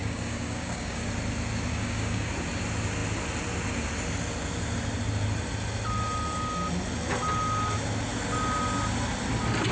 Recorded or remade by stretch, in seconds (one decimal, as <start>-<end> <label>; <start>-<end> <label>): 0.0-1.1 remade; 1.1-1.7 recorded; 1.7-2.3 remade; 2.3-9.7 recorded